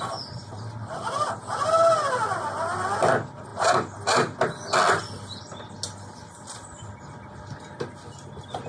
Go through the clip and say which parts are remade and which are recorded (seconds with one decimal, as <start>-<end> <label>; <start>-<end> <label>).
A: 0.0-8.7 recorded